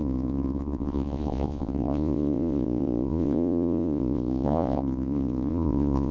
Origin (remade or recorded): remade